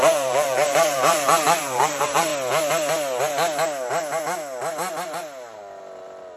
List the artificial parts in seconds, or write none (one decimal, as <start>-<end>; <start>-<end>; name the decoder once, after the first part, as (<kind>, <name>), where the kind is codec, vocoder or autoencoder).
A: 0.0-2.3 (vocoder, BigVGAN v2)